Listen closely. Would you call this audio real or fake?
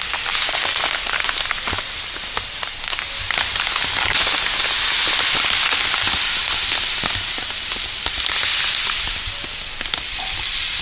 real